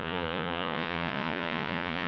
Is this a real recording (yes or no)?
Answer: no